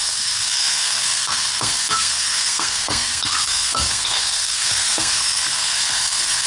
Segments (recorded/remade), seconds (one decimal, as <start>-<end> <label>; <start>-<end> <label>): 0.0-6.5 remade